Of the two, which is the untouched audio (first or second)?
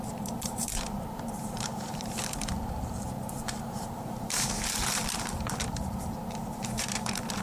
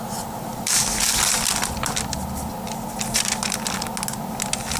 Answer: second